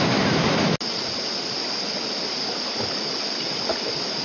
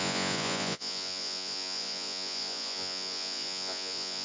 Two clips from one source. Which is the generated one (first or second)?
second